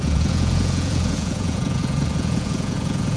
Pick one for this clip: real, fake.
fake